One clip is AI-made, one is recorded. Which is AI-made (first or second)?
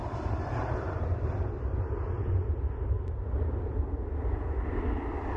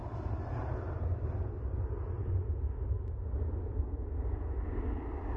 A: first